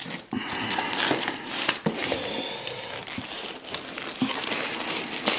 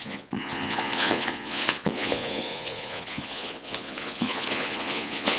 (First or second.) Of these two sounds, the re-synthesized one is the second